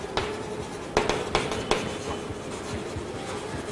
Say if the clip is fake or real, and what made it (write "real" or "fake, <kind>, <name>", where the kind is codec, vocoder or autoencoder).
real